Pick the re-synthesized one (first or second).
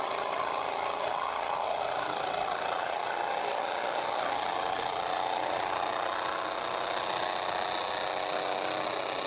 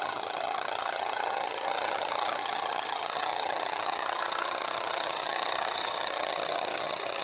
second